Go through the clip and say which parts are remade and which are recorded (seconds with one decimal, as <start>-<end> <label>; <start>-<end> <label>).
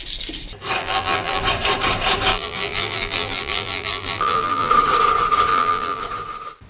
0.0-0.8 recorded; 0.8-1.4 remade; 1.4-2.3 recorded; 2.3-4.7 remade; 4.7-5.5 recorded; 5.5-6.0 remade; 6.0-6.7 recorded